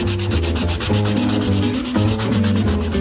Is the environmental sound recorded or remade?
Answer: recorded